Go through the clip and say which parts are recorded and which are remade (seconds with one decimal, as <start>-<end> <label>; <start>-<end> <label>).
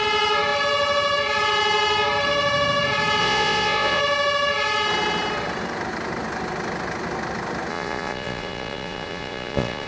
0.0-3.2 recorded; 3.2-4.0 remade; 4.0-7.7 recorded; 7.7-9.9 remade